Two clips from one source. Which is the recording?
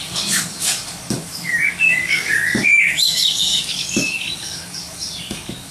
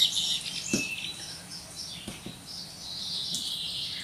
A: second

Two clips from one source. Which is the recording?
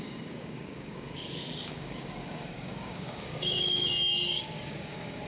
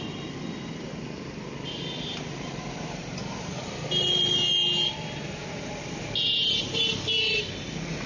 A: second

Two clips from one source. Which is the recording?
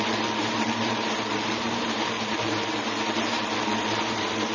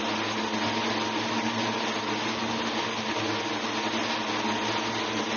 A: second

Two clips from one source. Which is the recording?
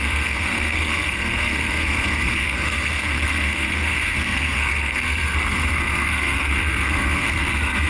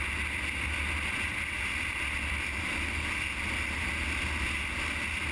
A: second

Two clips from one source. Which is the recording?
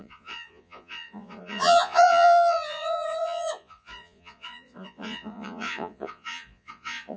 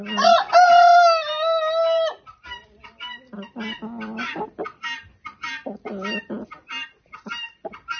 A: second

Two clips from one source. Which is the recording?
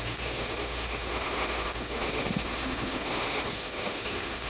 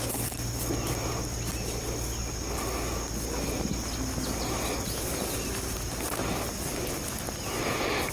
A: second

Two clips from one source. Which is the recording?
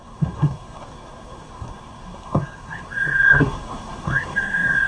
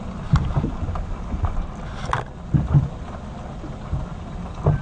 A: second